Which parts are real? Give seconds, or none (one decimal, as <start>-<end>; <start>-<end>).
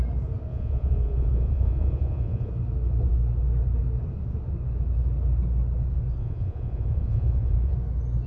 0.0-0.5; 2.5-6.2; 7.7-8.3